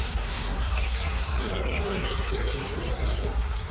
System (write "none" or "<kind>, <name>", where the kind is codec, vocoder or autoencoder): codec, SNAC